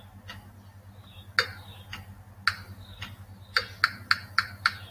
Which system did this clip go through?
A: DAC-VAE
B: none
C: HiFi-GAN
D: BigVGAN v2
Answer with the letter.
B